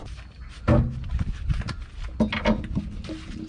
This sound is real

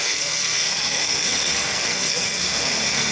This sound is fake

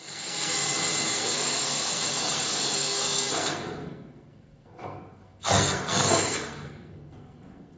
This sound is fake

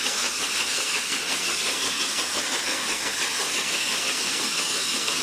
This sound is fake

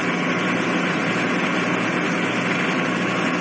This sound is real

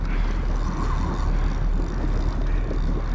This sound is real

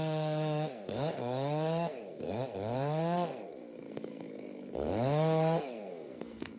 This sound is fake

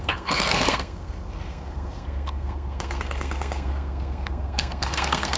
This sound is fake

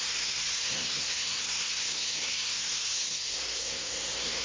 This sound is fake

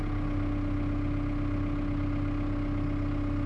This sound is real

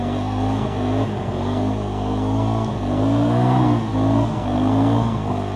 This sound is fake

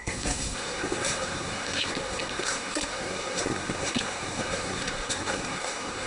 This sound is fake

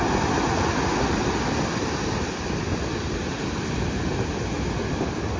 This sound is real